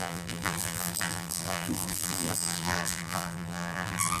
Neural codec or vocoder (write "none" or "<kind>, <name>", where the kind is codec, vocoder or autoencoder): vocoder, BigVGAN v2